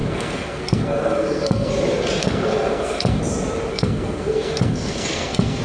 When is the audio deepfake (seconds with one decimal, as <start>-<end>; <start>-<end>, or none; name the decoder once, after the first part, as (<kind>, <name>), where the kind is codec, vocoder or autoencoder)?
0.0-1.7 (codec, SNAC); 2.2-3.2; 3.7-5.6